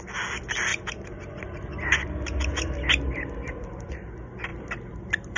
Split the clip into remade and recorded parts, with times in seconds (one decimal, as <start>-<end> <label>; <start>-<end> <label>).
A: 0.0-5.4 recorded